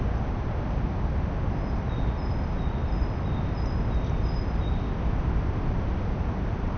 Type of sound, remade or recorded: recorded